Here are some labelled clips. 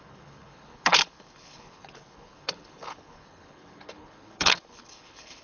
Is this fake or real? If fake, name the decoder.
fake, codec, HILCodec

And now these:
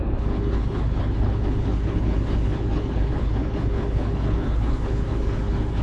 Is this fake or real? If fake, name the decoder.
fake, codec, HILCodec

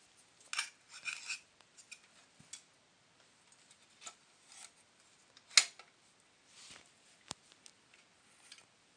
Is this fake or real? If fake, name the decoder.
real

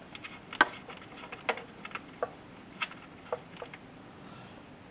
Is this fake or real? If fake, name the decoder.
real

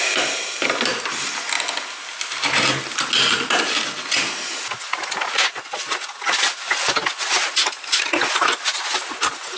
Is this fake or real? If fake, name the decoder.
real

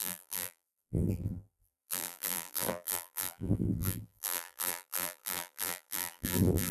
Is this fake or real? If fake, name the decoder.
fake, vocoder, BigVGAN v2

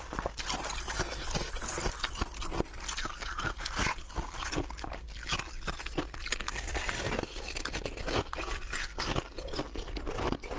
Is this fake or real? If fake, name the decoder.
real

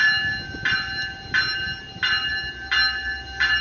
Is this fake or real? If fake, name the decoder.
real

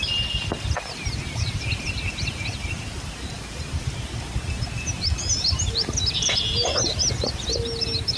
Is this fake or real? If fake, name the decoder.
real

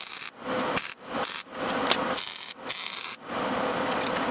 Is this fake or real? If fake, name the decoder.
real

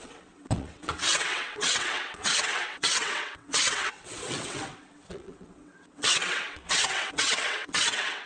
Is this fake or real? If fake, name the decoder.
fake, vocoder, WaveNeXt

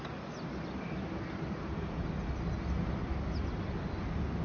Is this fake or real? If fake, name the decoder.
real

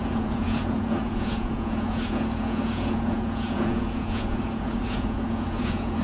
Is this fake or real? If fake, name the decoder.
fake, vocoder, Vocos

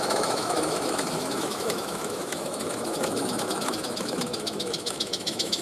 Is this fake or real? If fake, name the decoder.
fake, autoencoder, DAC-VAE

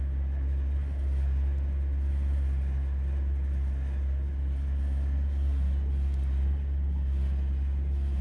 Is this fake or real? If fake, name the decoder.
real